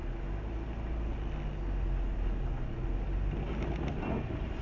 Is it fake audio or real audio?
real